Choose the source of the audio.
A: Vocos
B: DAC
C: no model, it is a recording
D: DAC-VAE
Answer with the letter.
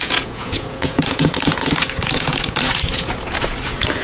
A